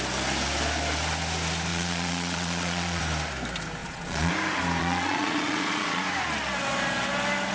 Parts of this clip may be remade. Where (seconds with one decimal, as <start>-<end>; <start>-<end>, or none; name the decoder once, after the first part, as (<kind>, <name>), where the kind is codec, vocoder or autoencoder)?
1.7-3.0 (vocoder, Vocos); 3.8-4.3; 4.8-6.0